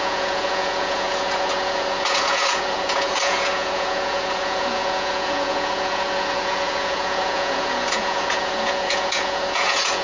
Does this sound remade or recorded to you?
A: remade